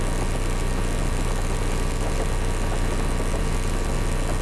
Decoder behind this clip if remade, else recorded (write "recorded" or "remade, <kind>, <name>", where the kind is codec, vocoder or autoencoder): recorded